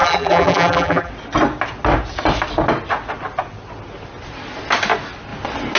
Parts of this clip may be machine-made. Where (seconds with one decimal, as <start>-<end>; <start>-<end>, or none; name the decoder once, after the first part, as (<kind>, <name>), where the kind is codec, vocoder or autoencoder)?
0.0-1.1 (vocoder, BigVGAN v2)